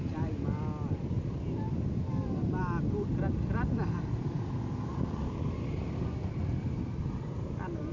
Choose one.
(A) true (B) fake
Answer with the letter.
A